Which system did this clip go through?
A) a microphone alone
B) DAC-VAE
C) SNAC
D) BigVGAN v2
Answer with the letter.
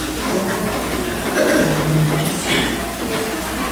A